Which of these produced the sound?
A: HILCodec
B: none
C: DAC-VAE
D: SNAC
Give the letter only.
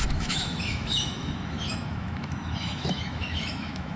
C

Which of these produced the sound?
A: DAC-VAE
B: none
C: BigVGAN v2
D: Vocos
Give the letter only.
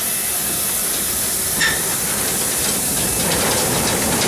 B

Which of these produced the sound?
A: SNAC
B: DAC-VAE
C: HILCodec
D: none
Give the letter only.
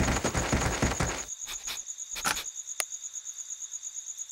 D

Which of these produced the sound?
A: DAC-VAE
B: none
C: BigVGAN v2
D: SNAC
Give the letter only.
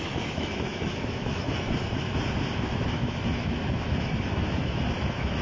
A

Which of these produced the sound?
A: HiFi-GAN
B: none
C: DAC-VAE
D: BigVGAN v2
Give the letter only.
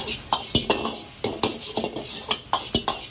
B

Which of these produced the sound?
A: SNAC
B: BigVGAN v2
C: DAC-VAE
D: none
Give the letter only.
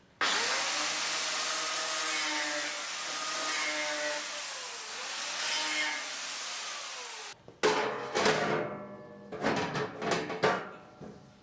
D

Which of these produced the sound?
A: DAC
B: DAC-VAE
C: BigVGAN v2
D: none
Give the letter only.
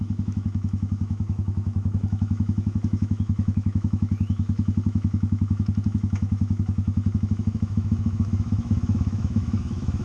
B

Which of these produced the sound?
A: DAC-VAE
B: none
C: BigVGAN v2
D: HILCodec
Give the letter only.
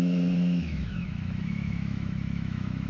A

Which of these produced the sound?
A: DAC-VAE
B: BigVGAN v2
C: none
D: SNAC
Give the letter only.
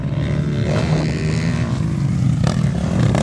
C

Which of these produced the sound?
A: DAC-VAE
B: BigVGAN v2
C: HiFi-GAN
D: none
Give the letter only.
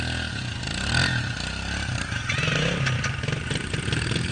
D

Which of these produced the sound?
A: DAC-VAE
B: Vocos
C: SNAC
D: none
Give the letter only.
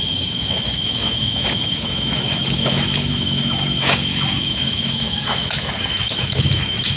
A